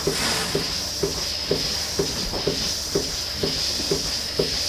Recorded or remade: recorded